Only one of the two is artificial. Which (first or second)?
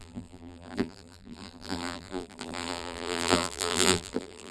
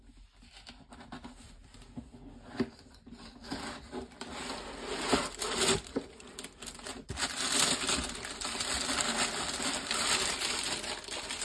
first